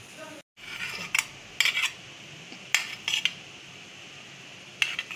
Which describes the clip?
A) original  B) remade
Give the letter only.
A